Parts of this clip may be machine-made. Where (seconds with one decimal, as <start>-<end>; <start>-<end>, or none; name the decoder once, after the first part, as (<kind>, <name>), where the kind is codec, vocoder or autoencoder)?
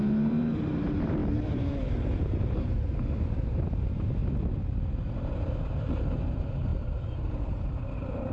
0.0-4.2 (vocoder, BigVGAN v2); 5.1-8.3